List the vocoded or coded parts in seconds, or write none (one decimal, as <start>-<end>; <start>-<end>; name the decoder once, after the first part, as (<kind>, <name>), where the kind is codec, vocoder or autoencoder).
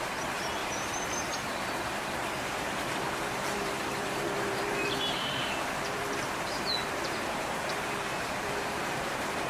0.0-0.6 (vocoder, BigVGAN v2); 2.4-9.5